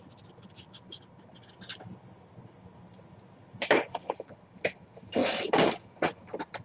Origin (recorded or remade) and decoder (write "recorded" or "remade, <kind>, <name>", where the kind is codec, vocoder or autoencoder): recorded